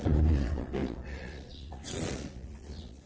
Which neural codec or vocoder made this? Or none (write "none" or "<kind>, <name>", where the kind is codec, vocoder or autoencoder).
vocoder, Vocos